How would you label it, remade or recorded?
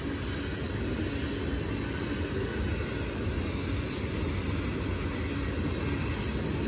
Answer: recorded